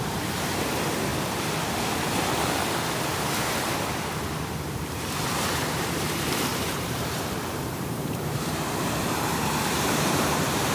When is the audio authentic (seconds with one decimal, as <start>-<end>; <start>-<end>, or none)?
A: 1.1-4.6

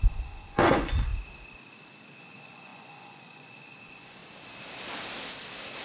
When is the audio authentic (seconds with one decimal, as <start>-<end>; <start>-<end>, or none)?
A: 1.1-2.2; 4.2-5.8

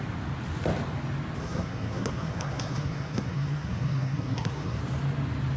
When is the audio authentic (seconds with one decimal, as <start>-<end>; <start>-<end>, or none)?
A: 0.0-1.4; 4.8-5.6

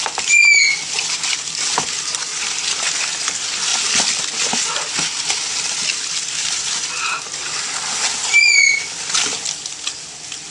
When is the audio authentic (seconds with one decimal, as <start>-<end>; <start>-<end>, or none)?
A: 0.0-10.5

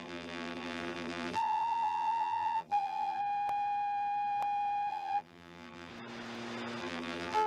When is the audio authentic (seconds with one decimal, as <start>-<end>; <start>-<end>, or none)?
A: 3.2-4.9; 5.9-6.8

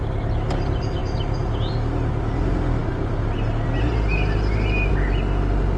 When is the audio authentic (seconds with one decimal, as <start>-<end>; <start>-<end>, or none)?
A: 0.0-5.8